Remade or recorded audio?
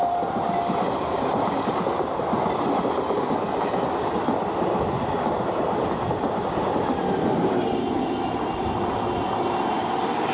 recorded